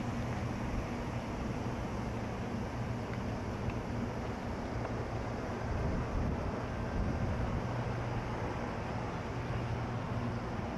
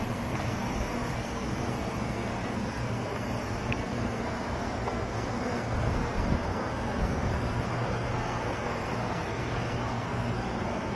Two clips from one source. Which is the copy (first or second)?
second